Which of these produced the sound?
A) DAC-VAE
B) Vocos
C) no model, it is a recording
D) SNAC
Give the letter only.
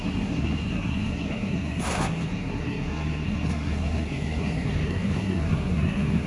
D